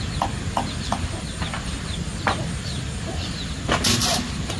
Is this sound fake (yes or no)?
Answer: no